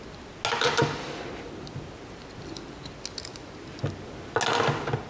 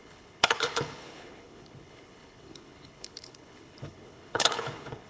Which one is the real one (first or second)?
first